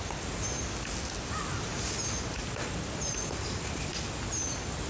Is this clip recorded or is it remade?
recorded